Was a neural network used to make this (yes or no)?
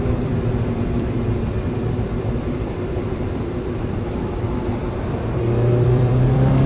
yes